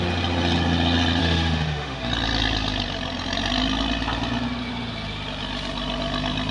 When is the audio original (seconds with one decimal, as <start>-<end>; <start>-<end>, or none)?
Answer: 0.0-1.2; 2.1-6.5